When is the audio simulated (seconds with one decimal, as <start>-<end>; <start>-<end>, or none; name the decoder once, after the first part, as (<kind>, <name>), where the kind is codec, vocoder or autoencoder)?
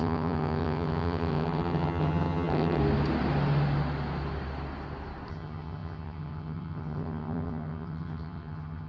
0.0-2.8 (vocoder, HiFi-GAN); 5.3-8.9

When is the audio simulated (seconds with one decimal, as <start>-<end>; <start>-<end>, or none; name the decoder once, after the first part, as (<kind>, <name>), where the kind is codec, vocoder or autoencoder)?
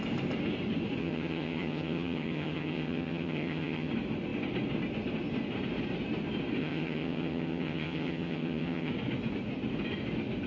1.0-3.9 (vocoder, HiFi-GAN); 6.6-8.9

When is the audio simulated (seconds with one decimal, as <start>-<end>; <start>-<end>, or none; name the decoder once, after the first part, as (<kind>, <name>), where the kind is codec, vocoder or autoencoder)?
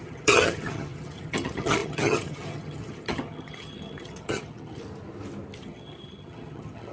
0.0-4.8 (vocoder, HiFi-GAN); 5.6-6.9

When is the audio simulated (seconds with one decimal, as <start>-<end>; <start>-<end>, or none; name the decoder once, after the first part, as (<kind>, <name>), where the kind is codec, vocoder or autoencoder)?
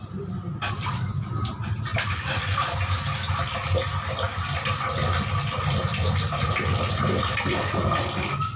none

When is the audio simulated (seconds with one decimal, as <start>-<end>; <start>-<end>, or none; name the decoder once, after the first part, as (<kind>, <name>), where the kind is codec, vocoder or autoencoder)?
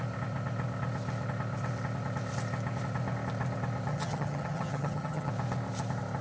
3.9-5.3 (vocoder, HiFi-GAN)